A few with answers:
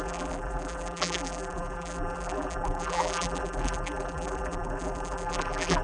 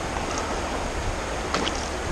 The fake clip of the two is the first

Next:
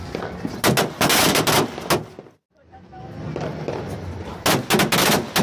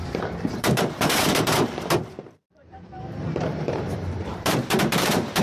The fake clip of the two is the second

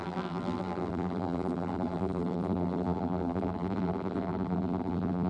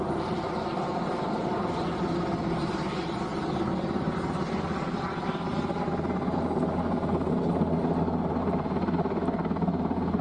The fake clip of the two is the first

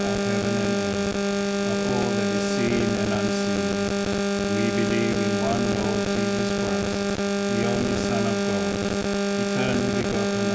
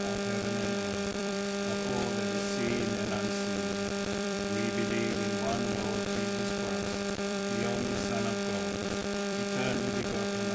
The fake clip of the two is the second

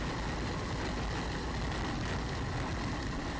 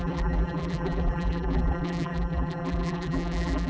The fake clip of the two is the second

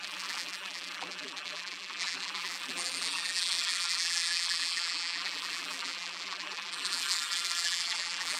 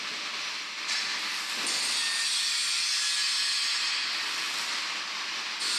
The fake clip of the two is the first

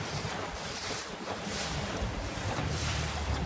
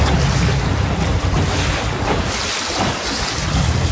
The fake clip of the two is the first